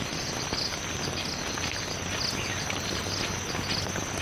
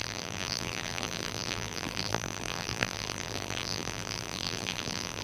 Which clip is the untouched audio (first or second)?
first